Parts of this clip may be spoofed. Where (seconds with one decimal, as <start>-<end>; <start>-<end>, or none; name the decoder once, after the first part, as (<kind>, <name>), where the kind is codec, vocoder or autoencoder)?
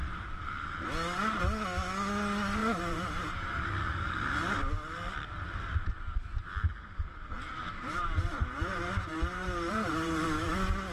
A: 2.6-3.6 (vocoder, BigVGAN v2); 6.3-10.5